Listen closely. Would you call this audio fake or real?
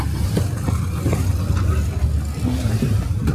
real